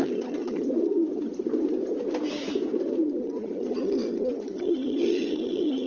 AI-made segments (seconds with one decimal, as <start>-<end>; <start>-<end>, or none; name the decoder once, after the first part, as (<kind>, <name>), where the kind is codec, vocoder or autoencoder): 0.0-0.7 (vocoder, HiFi-GAN); 3.2-5.9